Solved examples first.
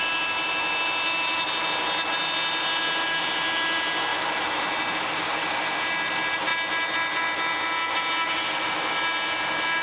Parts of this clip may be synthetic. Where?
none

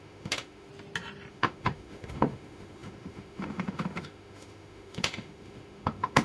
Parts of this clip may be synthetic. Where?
0.0-0.7; 1.3-6.2

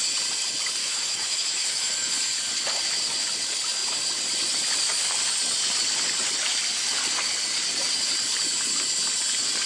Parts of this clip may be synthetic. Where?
0.8-2.1

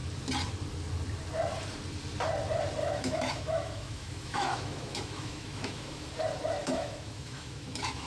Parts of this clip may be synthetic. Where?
2.8-6.1; 6.6-8.1

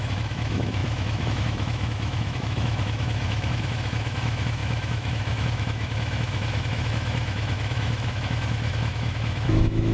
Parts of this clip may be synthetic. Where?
0.0-9.9